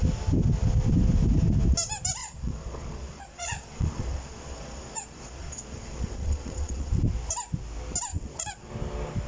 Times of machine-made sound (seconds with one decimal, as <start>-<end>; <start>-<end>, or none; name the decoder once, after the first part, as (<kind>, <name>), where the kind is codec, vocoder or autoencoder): 2.2-6.9 (vocoder, Vocos); 8.1-8.7